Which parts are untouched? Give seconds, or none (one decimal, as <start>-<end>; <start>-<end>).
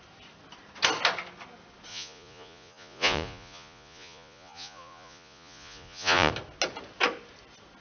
0.0-1.9; 6.3-7.8